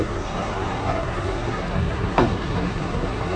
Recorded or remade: remade